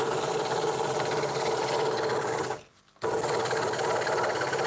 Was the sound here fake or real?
real